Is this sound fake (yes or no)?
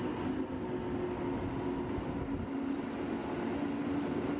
no